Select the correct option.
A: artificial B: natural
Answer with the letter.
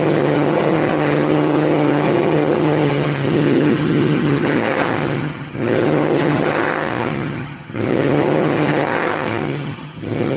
A